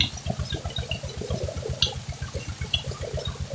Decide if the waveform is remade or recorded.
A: recorded